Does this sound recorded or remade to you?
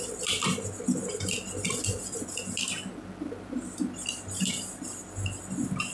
recorded